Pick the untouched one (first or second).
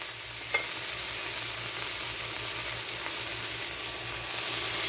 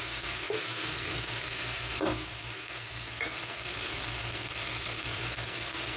first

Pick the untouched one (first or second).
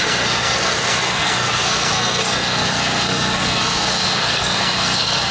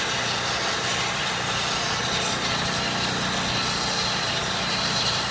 second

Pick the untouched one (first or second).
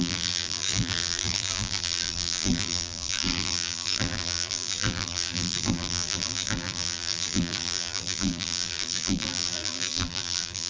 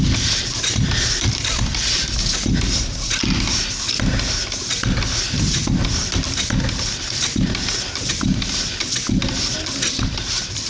second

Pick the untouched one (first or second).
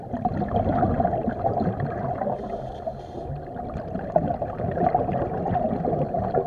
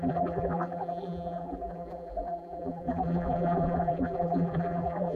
first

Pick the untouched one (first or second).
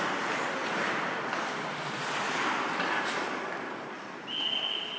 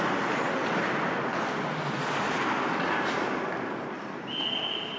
second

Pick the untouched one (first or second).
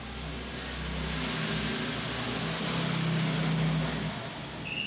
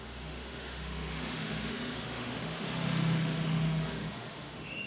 first